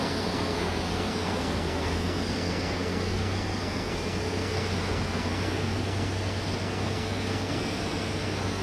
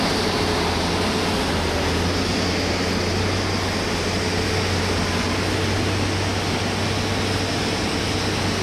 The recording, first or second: second